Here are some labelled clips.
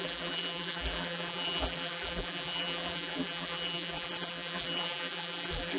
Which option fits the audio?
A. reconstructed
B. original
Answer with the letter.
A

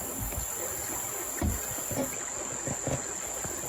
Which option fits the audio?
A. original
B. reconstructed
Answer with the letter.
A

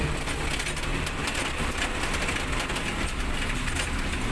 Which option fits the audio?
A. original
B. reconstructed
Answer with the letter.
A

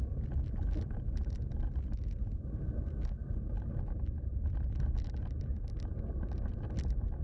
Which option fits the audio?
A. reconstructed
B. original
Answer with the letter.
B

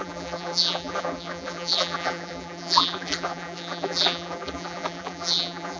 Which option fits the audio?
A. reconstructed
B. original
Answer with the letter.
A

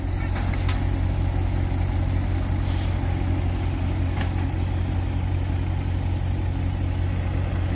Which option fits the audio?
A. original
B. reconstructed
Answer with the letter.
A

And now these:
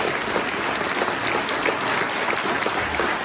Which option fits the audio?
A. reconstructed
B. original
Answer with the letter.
B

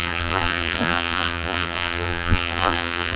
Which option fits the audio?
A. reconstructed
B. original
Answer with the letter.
A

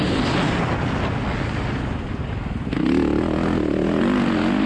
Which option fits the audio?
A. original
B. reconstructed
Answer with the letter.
A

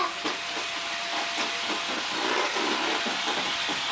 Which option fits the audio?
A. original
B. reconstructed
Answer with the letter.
A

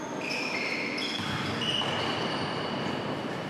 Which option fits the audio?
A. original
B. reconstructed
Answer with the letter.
A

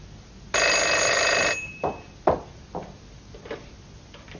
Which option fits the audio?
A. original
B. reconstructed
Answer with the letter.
A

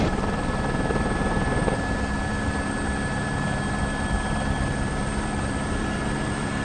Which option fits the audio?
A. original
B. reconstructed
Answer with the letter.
B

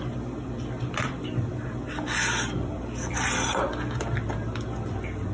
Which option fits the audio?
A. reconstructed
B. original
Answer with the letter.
B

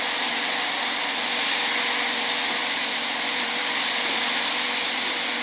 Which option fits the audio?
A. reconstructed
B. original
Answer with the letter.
A